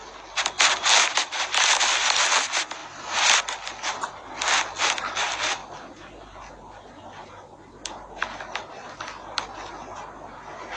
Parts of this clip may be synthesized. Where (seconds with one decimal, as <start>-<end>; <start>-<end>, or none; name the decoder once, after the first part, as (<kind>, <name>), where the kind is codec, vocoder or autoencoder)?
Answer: 5.6-7.3 (vocoder, BigVGAN v2); 8.2-9.7